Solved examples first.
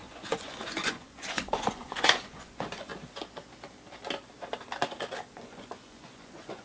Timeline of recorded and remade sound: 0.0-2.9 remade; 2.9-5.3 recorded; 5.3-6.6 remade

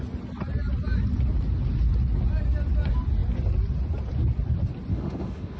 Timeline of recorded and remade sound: 0.0-4.9 recorded; 4.9-5.6 remade

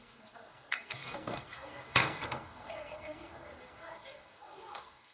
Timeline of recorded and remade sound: 0.0-5.1 remade

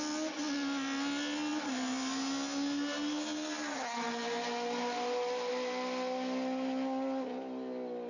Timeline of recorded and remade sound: 0.0-8.1 recorded

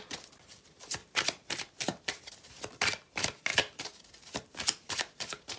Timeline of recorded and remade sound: 0.0-1.0 recorded; 1.0-2.5 remade; 2.5-3.5 recorded; 3.5-5.6 remade

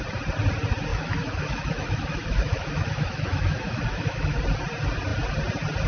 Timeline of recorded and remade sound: 0.0-0.9 recorded; 0.9-4.4 remade; 4.4-5.9 recorded

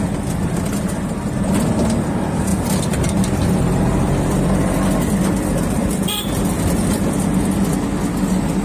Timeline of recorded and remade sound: 0.0-2.5 recorded; 2.5-7.1 remade; 7.1-8.6 recorded